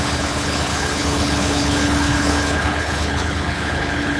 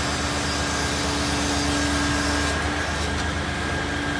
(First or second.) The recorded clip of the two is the second